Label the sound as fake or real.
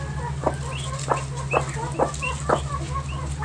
real